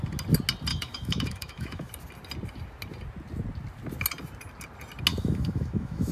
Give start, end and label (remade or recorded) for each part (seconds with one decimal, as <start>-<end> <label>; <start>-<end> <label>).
0.0-0.7 recorded; 0.7-1.9 remade; 1.9-5.1 recorded; 5.1-6.1 remade